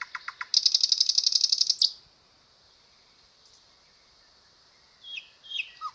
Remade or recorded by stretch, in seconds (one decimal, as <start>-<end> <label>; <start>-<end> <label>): 0.0-0.5 remade; 0.5-2.5 recorded; 2.5-5.9 remade